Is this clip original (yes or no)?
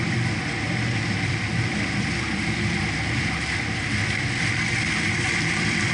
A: no